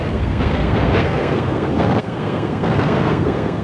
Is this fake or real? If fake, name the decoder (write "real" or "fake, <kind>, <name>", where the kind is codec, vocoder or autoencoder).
fake, codec, SNAC